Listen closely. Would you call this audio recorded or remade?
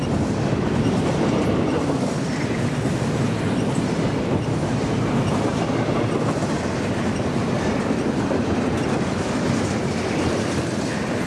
remade